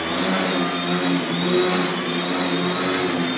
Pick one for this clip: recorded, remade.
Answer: recorded